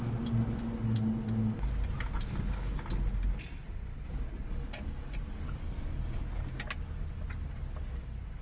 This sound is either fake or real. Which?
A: real